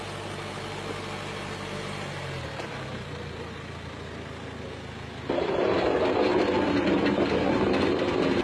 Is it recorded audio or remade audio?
recorded